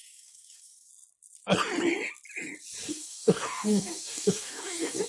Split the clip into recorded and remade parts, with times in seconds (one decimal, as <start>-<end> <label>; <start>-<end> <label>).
0.0-0.9 remade; 0.9-2.9 recorded; 2.9-5.1 remade